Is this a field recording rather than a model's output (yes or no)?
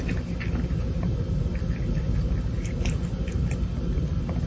yes